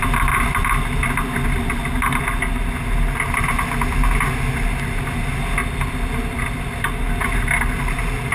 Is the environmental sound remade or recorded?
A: recorded